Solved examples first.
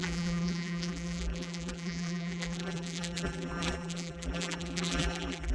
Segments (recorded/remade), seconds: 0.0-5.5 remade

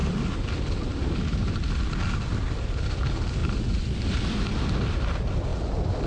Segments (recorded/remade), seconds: 0.0-6.1 recorded

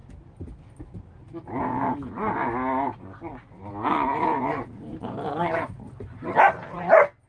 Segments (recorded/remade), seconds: 0.0-4.5 recorded; 4.5-6.5 remade; 6.5-7.3 recorded

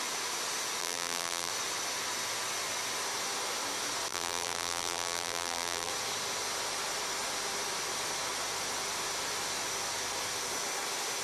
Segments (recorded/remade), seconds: 0.0-0.8 recorded; 0.8-1.5 remade; 1.5-4.1 recorded; 4.1-5.9 remade; 5.9-11.2 recorded

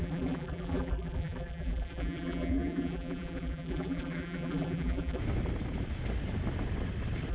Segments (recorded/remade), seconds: 0.0-5.2 remade; 5.2-7.3 recorded

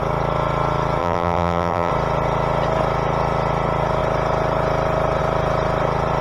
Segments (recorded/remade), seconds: 0.0-1.0 recorded; 1.0-1.9 remade; 1.9-6.2 recorded

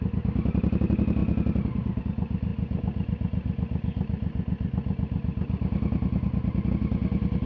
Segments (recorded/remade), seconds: 0.0-7.5 recorded

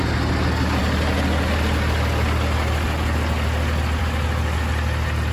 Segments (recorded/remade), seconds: 0.0-5.3 recorded